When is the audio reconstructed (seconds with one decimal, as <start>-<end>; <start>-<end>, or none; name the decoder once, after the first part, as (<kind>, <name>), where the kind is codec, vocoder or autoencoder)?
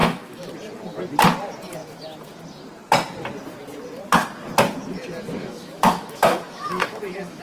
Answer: 0.0-0.5 (autoencoder, DAC-VAE); 5.4-7.4